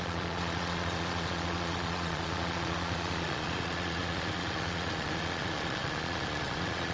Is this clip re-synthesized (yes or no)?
yes